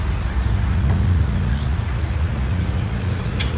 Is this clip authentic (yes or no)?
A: no